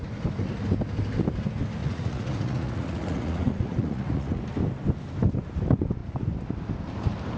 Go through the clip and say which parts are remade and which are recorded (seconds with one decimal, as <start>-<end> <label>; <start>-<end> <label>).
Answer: 0.0-1.8 recorded; 1.8-4.4 remade; 4.4-7.4 recorded

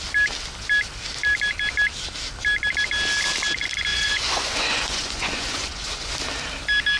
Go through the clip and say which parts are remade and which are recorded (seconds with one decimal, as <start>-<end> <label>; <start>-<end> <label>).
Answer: 0.0-3.9 recorded; 3.9-6.1 remade; 6.1-7.0 recorded

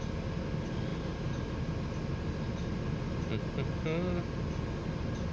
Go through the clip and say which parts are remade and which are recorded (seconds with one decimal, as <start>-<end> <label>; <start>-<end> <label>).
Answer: 0.0-5.3 recorded

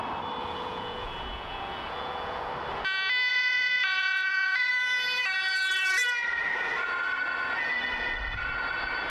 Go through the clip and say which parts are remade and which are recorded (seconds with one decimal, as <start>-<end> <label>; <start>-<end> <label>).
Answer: 0.0-0.4 recorded; 0.4-2.5 remade; 2.5-3.3 recorded; 3.3-4.7 remade; 4.7-9.1 recorded